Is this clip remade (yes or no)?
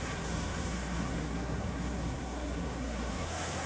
yes